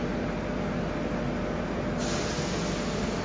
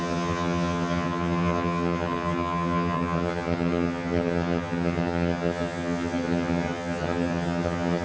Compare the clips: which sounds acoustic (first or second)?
first